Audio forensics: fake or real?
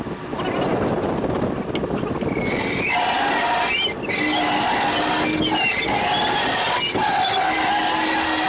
real